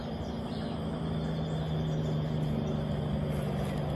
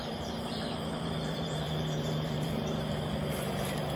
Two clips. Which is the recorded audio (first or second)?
first